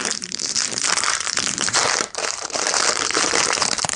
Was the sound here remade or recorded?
remade